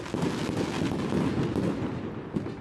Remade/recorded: recorded